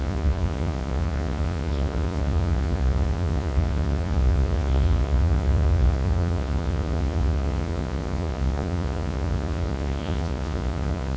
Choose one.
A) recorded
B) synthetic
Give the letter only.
B